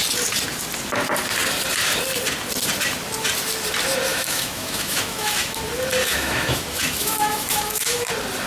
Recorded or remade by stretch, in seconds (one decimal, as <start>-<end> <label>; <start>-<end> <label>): 0.0-4.1 recorded; 4.1-5.6 remade; 5.6-6.0 recorded; 6.0-8.1 remade; 8.1-8.5 recorded